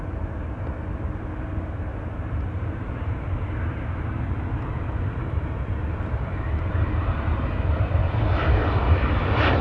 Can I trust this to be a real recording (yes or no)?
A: yes